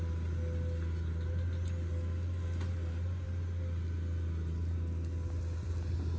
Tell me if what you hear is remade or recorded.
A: recorded